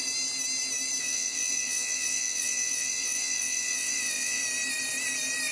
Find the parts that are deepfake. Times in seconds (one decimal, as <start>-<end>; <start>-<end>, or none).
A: 1.0-4.4